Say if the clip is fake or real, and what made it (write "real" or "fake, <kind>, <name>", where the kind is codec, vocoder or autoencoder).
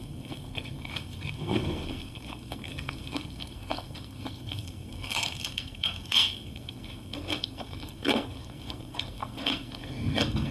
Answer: fake, codec, SNAC